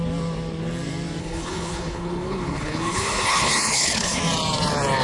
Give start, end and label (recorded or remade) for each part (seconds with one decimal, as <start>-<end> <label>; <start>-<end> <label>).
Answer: 0.0-1.2 recorded; 1.2-4.2 remade; 4.2-5.0 recorded

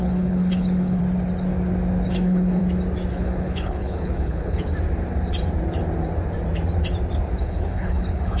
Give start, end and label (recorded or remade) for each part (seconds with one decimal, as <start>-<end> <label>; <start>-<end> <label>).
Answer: 0.0-1.0 remade; 1.0-2.1 recorded; 2.1-2.6 remade; 2.6-3.1 recorded; 3.1-4.7 remade; 4.7-7.4 recorded; 7.4-8.4 remade

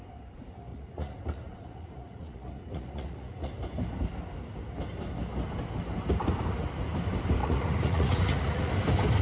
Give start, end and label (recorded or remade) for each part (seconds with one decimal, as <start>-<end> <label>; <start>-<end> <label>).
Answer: 0.0-0.7 recorded; 0.7-3.5 remade; 3.5-7.4 recorded; 7.4-8.7 remade; 8.7-9.2 recorded

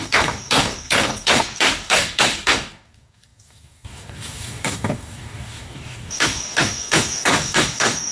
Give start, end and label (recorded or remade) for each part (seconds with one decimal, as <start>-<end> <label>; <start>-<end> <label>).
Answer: 0.0-8.1 remade

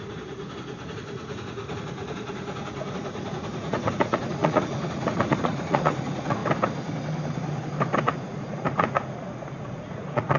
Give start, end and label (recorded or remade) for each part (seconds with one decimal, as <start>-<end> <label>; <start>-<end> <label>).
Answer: 0.0-6.4 remade; 6.4-8.0 recorded; 8.0-10.4 remade

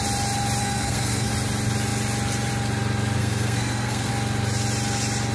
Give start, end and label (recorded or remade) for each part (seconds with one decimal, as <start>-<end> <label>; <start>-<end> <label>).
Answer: 0.0-0.6 recorded; 0.6-1.3 remade; 1.3-3.2 recorded; 3.2-4.1 remade; 4.1-5.3 recorded

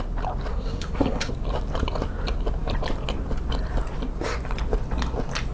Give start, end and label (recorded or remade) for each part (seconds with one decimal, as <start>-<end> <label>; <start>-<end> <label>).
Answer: 0.0-0.5 recorded; 0.5-1.3 remade; 1.3-5.5 recorded

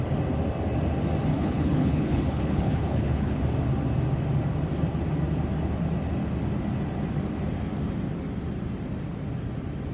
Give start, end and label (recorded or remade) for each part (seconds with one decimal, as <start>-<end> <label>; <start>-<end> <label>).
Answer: 0.0-1.3 recorded; 1.3-3.4 remade; 3.4-9.9 recorded